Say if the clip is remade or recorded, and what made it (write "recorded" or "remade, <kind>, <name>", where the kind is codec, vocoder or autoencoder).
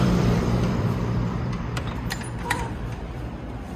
remade, vocoder, BigVGAN v2